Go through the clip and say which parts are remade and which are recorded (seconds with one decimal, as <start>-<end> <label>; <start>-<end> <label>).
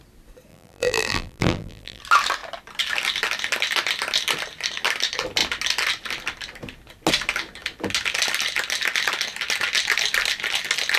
0.0-0.5 recorded; 0.5-2.0 remade; 2.0-11.0 recorded